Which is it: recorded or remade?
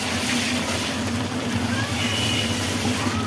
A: recorded